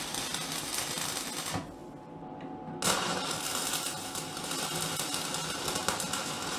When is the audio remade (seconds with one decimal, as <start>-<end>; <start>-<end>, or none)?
none